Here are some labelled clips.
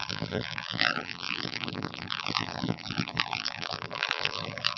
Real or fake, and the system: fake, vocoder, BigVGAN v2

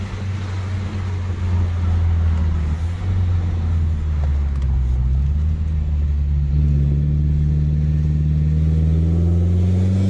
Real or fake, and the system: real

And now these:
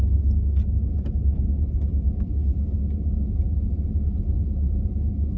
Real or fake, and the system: real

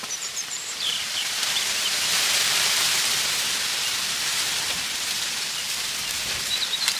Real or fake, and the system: fake, vocoder, BigVGAN v2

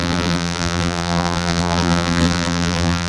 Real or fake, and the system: fake, vocoder, BigVGAN v2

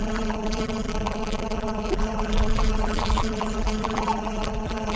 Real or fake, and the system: fake, vocoder, BigVGAN v2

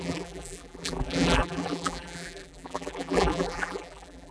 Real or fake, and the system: fake, vocoder, BigVGAN v2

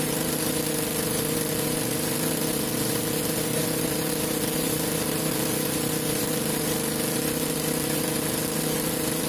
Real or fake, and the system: fake, vocoder, BigVGAN v2